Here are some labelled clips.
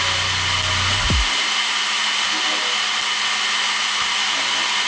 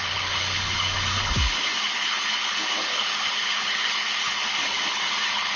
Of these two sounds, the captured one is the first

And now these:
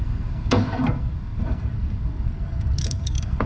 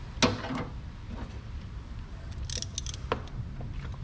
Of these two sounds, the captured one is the second